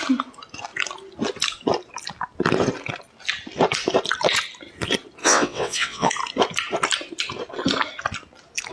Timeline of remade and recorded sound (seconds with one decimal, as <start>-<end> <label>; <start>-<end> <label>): 0.0-5.2 recorded; 5.2-6.1 remade; 6.1-8.7 recorded